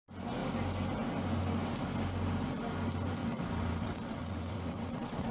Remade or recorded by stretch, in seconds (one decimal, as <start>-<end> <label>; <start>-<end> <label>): 0.0-3.2 recorded; 3.2-5.3 remade